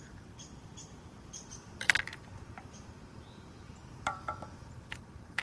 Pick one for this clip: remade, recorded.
remade